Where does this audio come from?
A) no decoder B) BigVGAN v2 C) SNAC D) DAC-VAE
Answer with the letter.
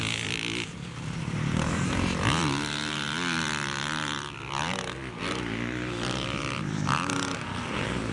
B